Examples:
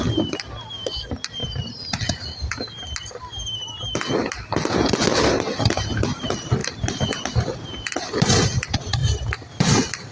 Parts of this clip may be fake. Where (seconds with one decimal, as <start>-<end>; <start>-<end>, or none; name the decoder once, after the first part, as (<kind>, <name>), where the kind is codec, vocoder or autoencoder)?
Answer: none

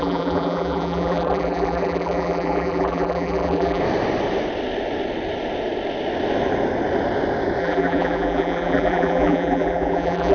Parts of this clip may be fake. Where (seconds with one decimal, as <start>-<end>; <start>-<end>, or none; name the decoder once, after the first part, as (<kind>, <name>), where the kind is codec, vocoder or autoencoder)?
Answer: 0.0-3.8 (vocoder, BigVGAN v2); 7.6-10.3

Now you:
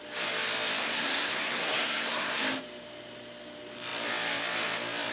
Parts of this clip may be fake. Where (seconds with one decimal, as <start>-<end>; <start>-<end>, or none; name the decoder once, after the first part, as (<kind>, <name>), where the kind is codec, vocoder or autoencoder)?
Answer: 0.8-2.4 (codec, SNAC)

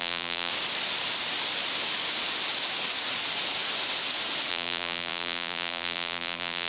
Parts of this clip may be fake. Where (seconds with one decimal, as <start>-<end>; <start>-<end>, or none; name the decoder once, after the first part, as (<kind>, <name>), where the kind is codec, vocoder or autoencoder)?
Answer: 0.0-0.5 (vocoder, BigVGAN v2); 4.5-6.7

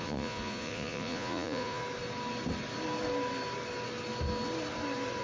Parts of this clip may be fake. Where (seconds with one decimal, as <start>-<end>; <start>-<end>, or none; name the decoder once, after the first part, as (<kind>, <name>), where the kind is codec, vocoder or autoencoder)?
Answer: 0.0-1.8 (vocoder, Vocos)